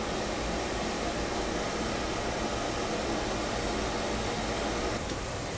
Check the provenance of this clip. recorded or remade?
recorded